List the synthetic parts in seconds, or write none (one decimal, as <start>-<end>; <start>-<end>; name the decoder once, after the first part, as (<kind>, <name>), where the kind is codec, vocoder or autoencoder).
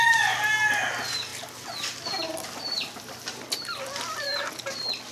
none